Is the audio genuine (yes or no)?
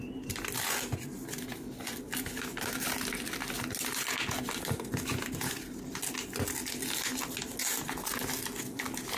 yes